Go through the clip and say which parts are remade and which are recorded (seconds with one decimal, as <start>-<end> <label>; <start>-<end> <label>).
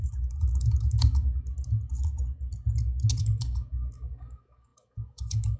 0.0-1.5 remade; 1.5-3.2 recorded; 3.2-5.6 remade